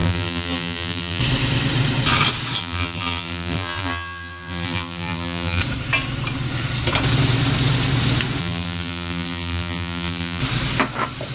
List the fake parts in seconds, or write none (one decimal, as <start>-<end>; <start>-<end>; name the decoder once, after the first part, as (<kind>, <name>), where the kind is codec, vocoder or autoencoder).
0.0-1.2 (vocoder, BigVGAN v2); 2.6-5.6; 8.4-10.4